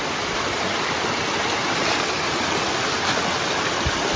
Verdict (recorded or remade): recorded